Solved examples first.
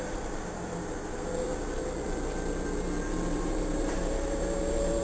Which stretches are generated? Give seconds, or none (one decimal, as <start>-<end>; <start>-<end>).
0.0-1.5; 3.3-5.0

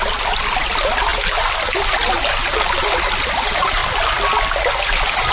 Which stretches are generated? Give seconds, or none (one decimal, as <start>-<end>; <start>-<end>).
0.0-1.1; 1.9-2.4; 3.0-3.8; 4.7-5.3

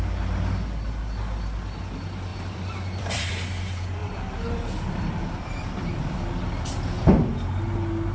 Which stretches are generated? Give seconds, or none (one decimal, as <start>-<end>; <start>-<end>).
2.3-3.3; 4.0-6.9

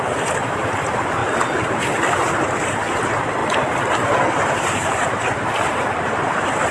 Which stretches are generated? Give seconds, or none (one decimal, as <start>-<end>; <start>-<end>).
0.0-1.2; 2.1-3.4; 4.5-6.7

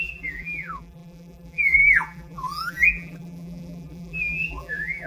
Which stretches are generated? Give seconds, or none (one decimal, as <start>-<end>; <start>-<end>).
0.0-5.1

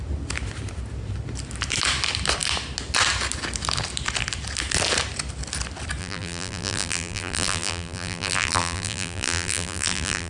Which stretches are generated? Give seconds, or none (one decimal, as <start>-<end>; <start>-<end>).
6.0-10.3

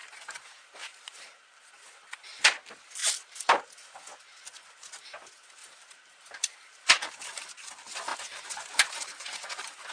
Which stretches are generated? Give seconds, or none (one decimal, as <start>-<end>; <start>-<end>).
0.0-1.7; 5.6-7.1; 8.1-9.9